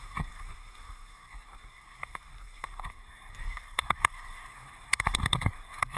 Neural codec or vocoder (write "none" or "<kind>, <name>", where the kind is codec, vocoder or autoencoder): codec, SNAC